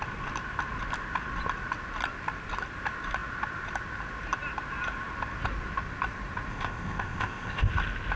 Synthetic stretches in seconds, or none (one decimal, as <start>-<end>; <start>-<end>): 6.5-7.7